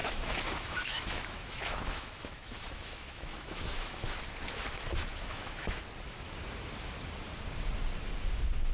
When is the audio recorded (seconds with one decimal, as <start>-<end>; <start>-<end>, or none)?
4.2-5.1; 5.8-8.7